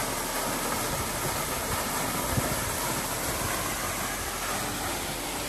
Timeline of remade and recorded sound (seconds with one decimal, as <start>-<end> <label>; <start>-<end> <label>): 0.0-5.5 recorded

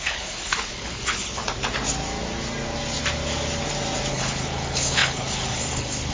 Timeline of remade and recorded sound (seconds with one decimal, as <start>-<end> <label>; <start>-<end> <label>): 0.0-1.4 remade; 1.4-4.1 recorded; 4.1-6.1 remade

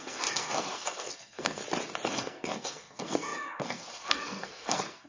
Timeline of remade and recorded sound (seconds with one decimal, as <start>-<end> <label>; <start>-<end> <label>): 0.0-1.6 remade; 1.6-2.1 recorded; 2.1-5.1 remade

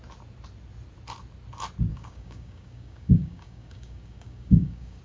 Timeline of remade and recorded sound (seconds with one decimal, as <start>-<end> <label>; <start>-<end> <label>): 0.0-1.9 recorded; 1.9-5.0 remade